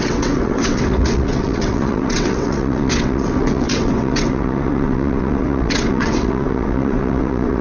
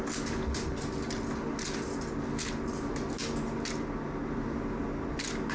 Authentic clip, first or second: second